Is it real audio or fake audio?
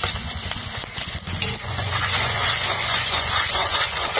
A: fake